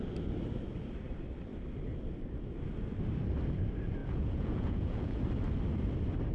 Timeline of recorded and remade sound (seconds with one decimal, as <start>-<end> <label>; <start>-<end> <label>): 0.0-4.0 recorded; 4.0-5.2 remade; 5.2-6.3 recorded